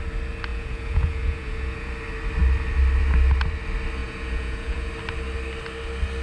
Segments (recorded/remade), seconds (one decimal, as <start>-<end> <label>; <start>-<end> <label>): 0.0-0.5 recorded; 0.5-1.9 remade; 1.9-4.0 recorded; 4.0-4.9 remade; 4.9-6.2 recorded